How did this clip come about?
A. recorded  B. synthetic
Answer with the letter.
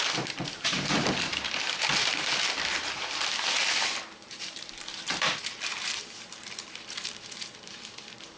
B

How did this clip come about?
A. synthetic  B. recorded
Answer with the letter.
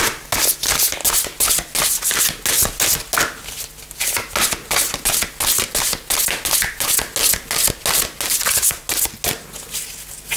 B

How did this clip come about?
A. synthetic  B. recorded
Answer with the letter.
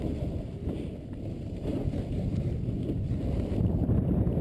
A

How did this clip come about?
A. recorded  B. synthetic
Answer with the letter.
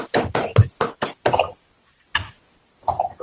A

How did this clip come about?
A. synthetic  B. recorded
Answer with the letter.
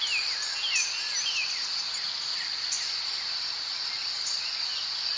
B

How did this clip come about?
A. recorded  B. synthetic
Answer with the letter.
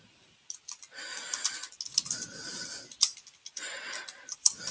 A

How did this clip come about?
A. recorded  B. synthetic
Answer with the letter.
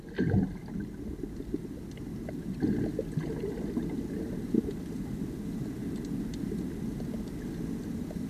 A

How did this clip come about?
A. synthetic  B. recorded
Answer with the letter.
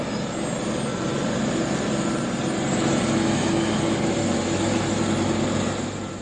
B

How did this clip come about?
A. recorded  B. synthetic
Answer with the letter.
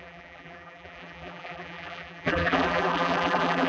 B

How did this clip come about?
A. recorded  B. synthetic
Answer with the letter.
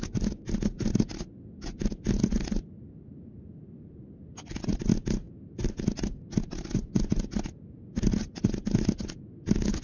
A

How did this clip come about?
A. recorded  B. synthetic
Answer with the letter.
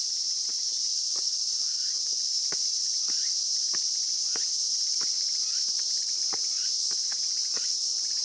B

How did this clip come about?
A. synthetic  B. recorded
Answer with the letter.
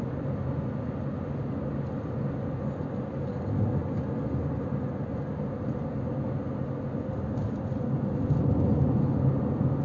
B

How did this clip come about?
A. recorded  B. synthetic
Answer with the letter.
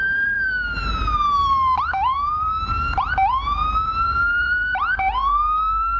B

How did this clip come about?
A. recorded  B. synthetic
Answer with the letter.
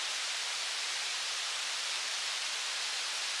B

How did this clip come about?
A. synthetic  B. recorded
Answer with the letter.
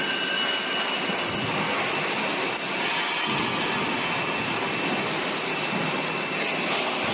B